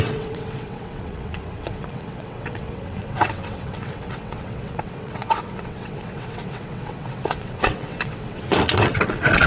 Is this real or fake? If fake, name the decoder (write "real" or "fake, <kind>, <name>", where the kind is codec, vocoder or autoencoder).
fake, vocoder, WaveNeXt